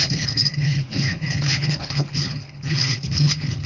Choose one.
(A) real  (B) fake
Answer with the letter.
B